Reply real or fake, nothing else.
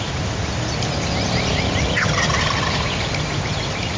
real